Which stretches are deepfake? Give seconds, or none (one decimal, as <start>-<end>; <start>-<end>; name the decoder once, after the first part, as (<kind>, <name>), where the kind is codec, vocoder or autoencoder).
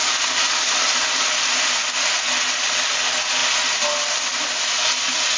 none